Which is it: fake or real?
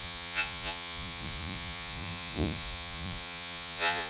fake